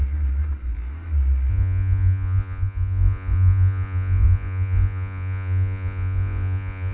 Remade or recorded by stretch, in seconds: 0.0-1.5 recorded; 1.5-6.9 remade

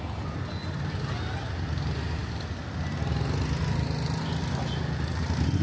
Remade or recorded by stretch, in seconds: 0.0-5.6 recorded